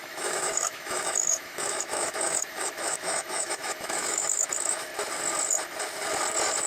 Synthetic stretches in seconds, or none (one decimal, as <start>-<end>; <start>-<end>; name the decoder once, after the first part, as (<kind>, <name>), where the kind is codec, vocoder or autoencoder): 0.0-4.9 (autoencoder, DAC-VAE)